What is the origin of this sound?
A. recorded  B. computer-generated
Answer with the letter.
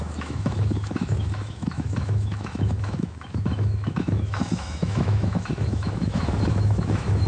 B